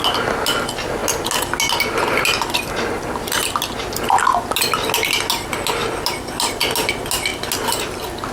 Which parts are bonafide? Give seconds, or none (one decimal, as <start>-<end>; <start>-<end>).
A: 0.0-8.3